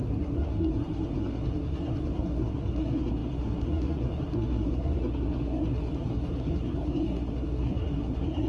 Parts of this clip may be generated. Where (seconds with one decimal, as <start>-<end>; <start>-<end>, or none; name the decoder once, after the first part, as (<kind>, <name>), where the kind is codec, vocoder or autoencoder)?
0.0-8.5 (codec, SNAC)